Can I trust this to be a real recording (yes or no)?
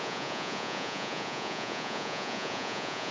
no